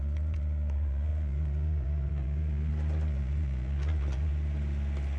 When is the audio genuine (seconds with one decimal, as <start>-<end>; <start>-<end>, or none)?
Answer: 4.3-5.2